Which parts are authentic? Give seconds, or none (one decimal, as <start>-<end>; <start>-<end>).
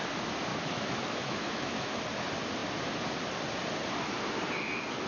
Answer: 0.0-0.5; 2.0-5.1